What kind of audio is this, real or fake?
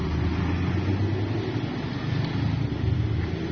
real